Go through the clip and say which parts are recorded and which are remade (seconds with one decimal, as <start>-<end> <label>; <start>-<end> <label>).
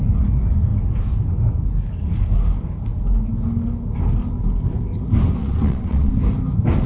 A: 0.0-5.4 recorded; 5.4-6.1 remade; 6.1-6.9 recorded